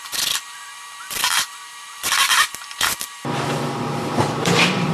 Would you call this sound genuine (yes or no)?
no